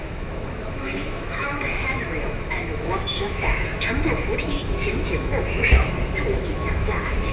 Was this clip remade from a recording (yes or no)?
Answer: yes